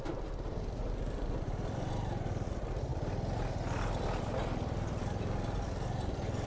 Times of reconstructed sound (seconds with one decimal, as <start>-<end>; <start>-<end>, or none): none